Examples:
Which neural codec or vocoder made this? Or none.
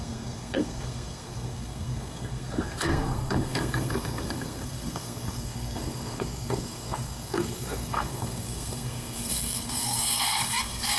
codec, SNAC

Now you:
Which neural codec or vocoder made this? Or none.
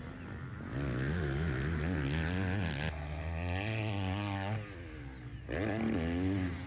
none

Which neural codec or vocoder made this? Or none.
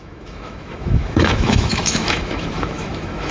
autoencoder, DAC-VAE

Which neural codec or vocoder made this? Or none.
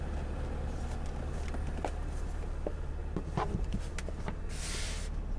none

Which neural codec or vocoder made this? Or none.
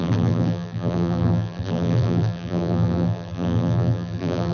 vocoder, BigVGAN v2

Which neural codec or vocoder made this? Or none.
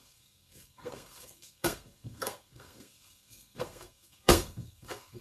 codec, SNAC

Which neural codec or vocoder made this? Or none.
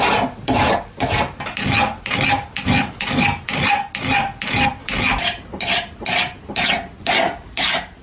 none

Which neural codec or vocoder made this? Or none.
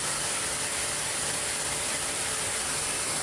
vocoder, BigVGAN v2